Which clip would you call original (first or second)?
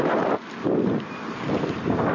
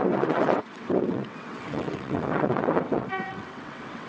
first